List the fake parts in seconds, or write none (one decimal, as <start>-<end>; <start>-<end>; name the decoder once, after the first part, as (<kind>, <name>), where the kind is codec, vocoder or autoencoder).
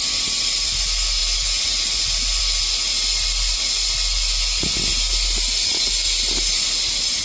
none